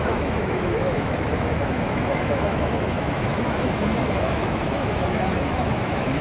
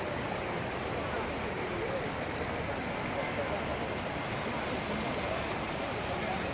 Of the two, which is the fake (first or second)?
first